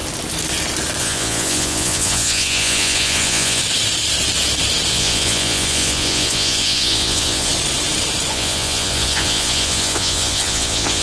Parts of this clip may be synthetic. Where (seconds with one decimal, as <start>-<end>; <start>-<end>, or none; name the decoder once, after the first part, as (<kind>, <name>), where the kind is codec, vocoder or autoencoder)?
1.0-3.6 (vocoder, Vocos); 4.9-7.5; 8.3-11.0